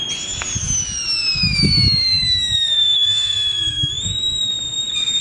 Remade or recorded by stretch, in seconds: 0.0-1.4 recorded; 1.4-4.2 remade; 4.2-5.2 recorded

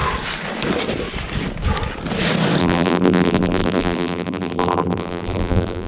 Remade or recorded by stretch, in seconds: 0.0-2.6 recorded; 2.6-5.9 remade